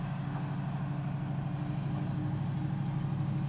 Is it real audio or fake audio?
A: real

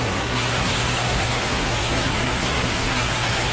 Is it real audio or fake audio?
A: fake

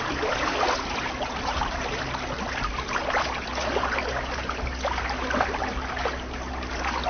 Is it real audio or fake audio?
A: real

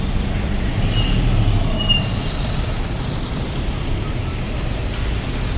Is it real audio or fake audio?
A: real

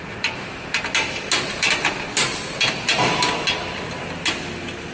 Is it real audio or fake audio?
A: real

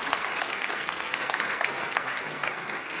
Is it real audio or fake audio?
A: fake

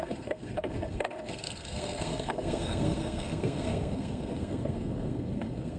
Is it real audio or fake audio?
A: fake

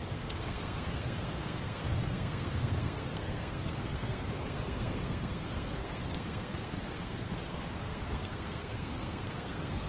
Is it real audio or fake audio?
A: fake